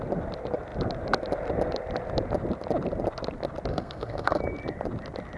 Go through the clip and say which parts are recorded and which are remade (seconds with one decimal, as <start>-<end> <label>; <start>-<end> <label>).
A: 0.0-3.7 recorded; 3.7-4.4 remade; 4.4-5.4 recorded